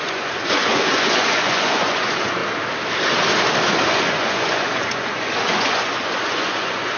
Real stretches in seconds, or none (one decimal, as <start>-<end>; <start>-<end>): 2.4-3.9